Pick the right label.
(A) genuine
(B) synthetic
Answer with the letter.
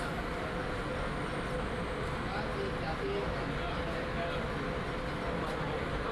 A